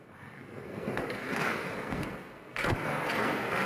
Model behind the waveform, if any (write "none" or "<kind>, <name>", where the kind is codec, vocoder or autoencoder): codec, SNAC